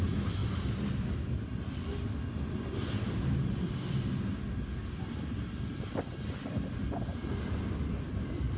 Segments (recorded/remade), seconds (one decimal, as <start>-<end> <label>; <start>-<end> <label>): 0.0-8.6 recorded